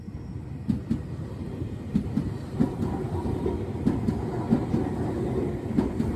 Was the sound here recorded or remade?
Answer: recorded